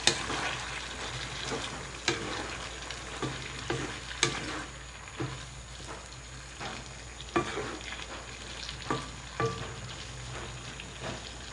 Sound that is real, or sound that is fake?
real